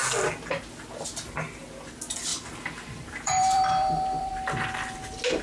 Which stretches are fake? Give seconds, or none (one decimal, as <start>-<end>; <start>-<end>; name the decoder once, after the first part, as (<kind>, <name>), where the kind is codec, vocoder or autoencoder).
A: 2.3-4.3 (vocoder, BigVGAN v2)